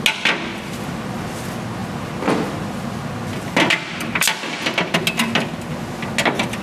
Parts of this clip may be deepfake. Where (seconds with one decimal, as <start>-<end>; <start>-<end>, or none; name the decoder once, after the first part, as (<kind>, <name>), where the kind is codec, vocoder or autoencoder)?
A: 0.5-1.0 (vocoder, BigVGAN v2)